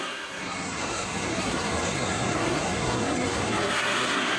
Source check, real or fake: fake